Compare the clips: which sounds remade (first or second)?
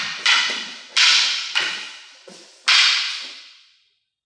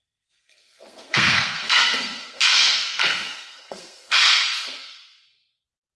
second